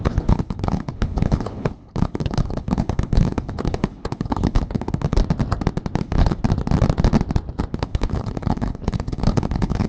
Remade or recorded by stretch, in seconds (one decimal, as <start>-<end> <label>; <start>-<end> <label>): 0.0-5.2 remade; 5.2-6.0 recorded; 6.0-6.4 remade; 6.4-7.7 recorded; 7.7-9.9 remade